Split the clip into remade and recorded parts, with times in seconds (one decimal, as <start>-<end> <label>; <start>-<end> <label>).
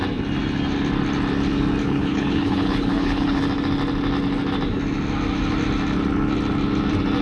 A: 0.0-1.8 recorded; 1.8-3.4 remade; 3.4-7.2 recorded